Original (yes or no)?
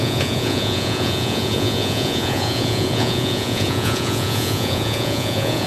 no